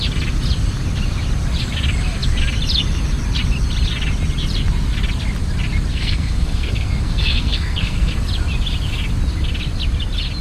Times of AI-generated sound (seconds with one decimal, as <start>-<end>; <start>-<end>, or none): 5.9-8.1